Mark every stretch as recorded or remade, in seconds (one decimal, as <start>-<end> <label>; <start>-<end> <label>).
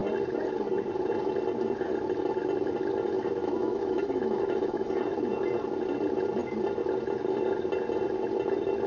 0.0-3.4 recorded; 3.4-4.9 remade; 4.9-8.9 recorded